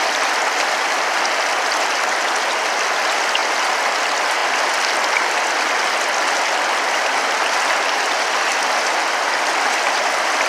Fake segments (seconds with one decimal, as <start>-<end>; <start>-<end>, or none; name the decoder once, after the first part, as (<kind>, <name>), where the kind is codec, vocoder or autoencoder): none